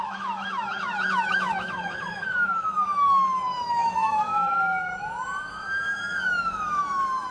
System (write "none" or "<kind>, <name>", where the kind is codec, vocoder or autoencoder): autoencoder, DAC-VAE